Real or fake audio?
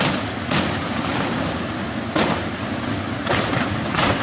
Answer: real